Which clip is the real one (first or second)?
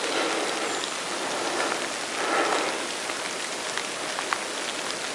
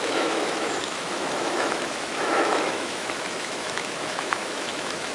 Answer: first